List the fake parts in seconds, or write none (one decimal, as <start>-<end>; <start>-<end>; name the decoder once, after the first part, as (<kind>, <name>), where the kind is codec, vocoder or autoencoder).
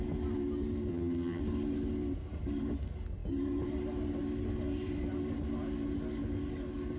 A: 0.9-1.4 (vocoder, HiFi-GAN)